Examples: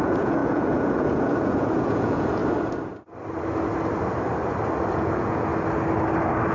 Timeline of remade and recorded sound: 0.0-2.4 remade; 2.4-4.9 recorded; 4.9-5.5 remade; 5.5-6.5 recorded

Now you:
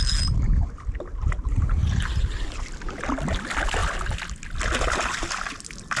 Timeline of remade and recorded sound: 0.0-6.0 recorded

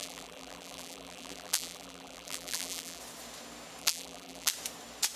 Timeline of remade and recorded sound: 0.0-3.0 remade; 3.0-3.8 recorded; 3.8-4.5 remade; 4.5-5.2 recorded

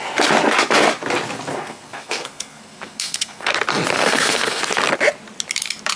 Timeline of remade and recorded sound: 0.0-1.5 recorded; 1.5-3.5 remade; 3.5-3.9 recorded; 3.9-4.6 remade; 4.6-6.0 recorded

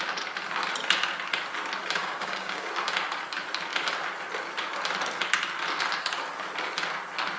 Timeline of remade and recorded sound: 0.0-2.0 recorded; 2.0-2.7 remade; 2.7-7.4 recorded